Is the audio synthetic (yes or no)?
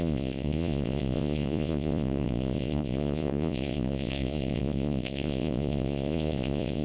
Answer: yes